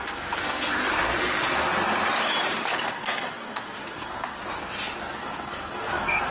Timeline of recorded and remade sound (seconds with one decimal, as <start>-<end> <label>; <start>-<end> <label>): 0.0-0.7 remade; 0.7-2.7 recorded; 2.7-4.4 remade; 4.4-5.0 recorded; 5.0-6.3 remade